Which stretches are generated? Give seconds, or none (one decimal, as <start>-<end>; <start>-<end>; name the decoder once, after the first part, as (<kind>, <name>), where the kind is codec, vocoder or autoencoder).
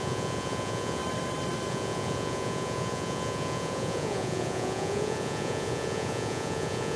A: 0.0-1.0 (vocoder, Vocos); 1.7-7.0